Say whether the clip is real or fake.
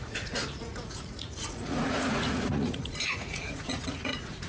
fake